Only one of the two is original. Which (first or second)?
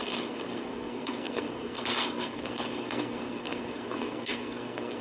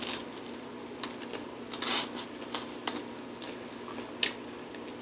second